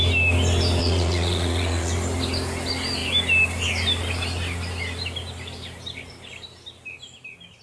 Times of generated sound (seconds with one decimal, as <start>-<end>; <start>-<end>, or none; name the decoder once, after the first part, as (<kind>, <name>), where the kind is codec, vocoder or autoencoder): 0.8-1.9 (vocoder, Vocos)